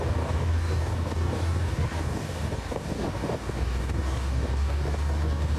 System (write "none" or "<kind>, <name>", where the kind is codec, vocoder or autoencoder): codec, DAC